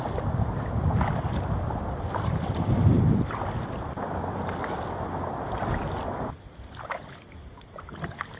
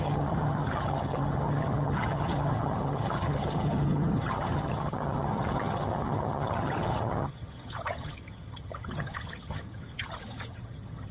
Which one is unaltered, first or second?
first